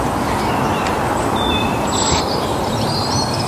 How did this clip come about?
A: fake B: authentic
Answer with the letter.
A